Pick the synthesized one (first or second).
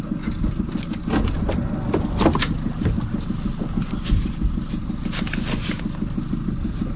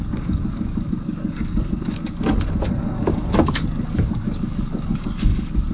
second